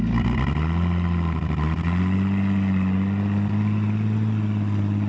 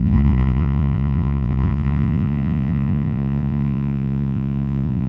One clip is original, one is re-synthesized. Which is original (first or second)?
first